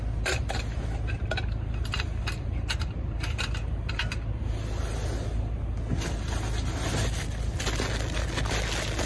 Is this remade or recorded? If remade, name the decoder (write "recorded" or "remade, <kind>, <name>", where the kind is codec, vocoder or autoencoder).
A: recorded